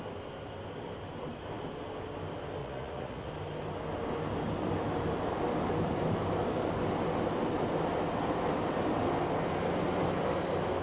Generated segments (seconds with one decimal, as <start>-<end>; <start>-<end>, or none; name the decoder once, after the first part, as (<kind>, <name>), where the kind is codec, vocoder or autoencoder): 2.6-3.3 (vocoder, Vocos)